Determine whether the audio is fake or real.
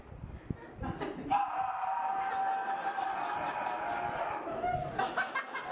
real